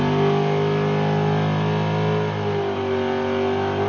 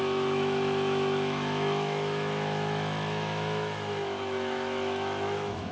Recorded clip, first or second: first